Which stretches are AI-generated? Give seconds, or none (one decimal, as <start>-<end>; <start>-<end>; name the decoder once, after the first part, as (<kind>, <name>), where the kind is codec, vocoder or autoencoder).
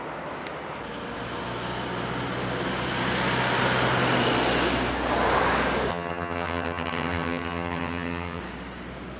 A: 5.9-8.4 (vocoder, HiFi-GAN)